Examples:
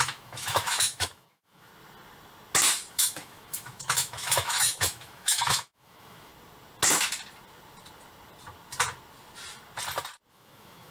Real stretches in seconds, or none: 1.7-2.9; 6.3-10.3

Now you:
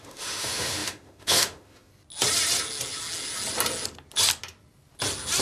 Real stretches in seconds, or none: 1.9-5.4

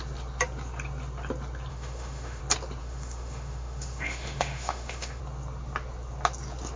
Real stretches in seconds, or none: 0.0-1.7; 2.4-2.8; 5.2-6.8

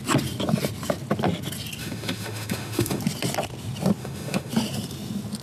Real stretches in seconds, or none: 0.0-1.8; 3.0-4.0; 4.5-5.4

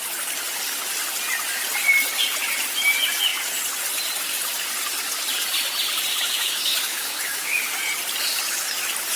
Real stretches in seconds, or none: 0.0-6.1; 7.6-9.2

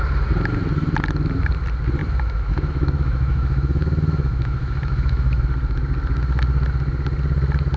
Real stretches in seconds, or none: 0.0-2.0; 5.4-7.8